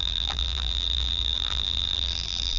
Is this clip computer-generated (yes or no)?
yes